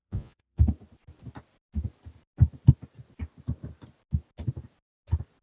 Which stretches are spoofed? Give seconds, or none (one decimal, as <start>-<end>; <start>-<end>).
0.0-0.6